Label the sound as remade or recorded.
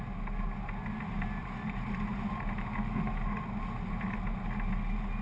recorded